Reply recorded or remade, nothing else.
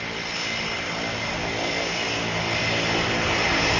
recorded